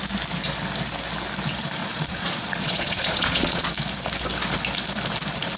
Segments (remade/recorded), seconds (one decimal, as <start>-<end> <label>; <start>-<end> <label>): 0.0-1.8 recorded; 1.8-3.7 remade; 3.7-5.6 recorded